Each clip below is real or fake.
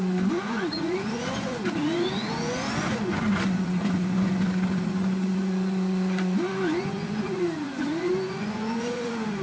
fake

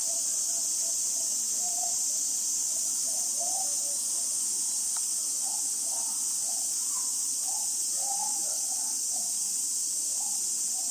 real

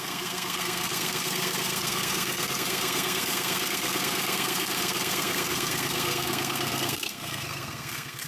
fake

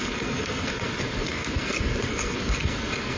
fake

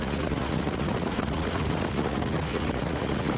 fake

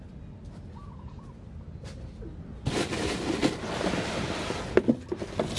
real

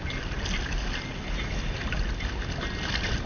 real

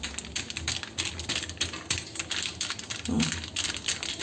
real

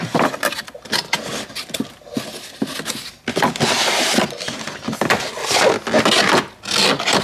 real